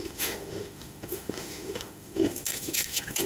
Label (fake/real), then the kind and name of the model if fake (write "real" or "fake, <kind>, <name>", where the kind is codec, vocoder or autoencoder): fake, autoencoder, DAC-VAE